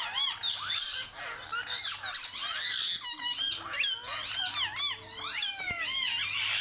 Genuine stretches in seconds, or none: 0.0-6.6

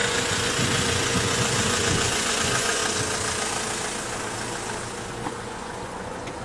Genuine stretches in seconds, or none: 2.8-5.1

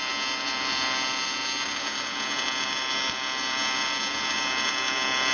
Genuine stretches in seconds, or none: 0.0-5.3

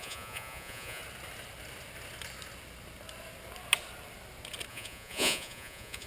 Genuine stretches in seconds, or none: 1.0-4.7

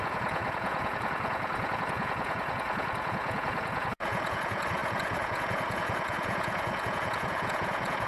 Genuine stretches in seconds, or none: none

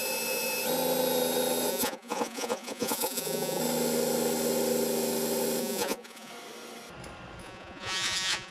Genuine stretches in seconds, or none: 0.0-1.7; 3.6-5.6; 6.3-7.4

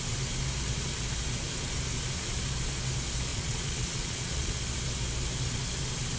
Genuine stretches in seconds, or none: 0.0-3.3; 4.6-6.2